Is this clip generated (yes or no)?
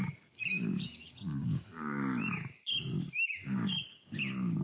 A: yes